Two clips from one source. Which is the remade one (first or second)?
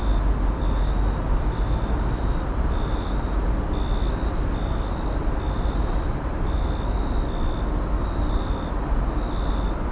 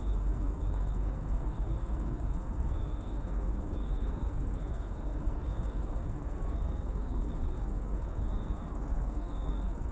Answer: second